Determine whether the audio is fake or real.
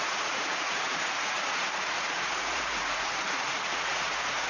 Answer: fake